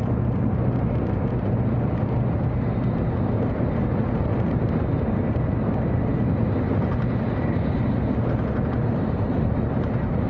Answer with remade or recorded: recorded